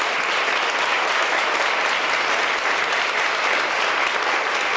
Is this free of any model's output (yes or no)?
yes